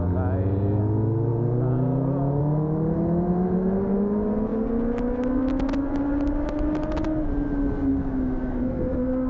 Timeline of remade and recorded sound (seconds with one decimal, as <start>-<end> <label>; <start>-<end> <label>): 0.0-7.9 recorded; 7.9-8.6 remade; 8.6-9.3 recorded